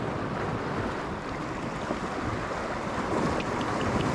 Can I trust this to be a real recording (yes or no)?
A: yes